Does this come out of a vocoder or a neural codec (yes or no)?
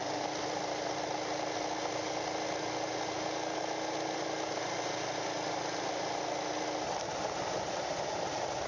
no